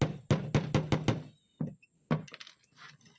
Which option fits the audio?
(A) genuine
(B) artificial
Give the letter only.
A